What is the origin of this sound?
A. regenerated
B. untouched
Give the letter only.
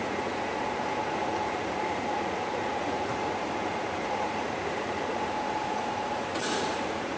A